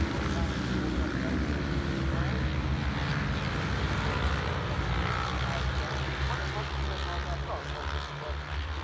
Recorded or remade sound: recorded